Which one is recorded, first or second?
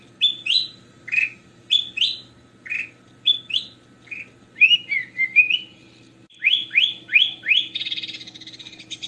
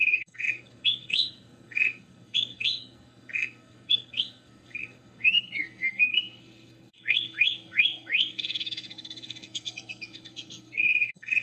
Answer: first